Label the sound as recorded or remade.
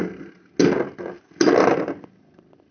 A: recorded